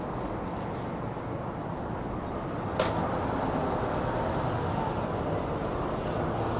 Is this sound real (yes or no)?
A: yes